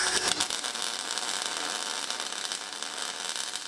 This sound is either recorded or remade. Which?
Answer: recorded